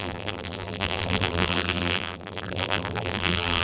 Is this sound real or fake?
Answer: fake